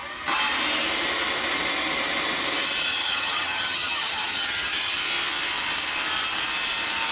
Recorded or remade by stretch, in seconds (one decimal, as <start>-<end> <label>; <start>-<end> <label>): 0.0-2.9 recorded; 2.9-5.0 remade; 5.0-7.1 recorded